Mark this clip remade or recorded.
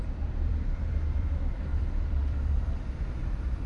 remade